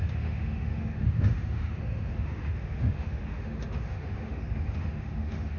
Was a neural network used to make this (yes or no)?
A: yes